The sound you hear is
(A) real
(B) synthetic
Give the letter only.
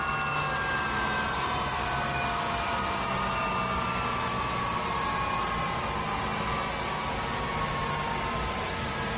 A